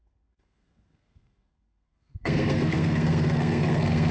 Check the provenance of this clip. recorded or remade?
remade